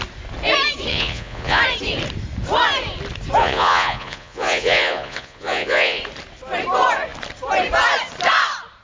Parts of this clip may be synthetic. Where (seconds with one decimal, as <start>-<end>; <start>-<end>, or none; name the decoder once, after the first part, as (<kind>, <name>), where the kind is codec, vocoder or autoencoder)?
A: 0.9-1.6 (vocoder, Vocos); 3.4-6.0